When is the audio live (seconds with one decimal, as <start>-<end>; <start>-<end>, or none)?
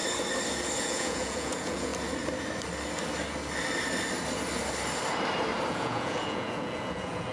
0.0-0.8; 1.9-5.7